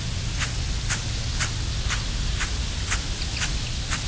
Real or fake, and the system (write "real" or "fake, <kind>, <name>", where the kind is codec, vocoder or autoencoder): real